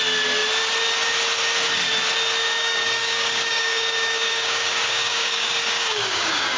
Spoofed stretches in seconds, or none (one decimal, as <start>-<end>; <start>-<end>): 2.4-6.6